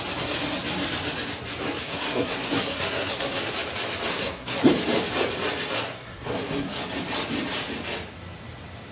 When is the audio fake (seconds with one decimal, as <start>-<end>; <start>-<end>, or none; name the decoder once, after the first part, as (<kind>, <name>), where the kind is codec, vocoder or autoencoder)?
1.8-3.5 (codec, SNAC); 4.1-4.7; 5.8-6.8